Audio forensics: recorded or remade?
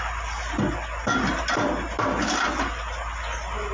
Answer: recorded